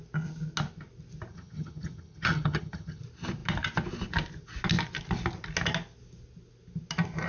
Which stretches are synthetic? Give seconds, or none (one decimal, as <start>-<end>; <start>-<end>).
1.3-3.0